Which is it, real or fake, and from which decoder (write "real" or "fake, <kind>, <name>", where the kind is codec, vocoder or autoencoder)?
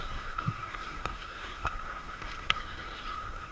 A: fake, codec, SNAC